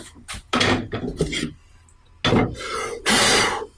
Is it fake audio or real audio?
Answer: real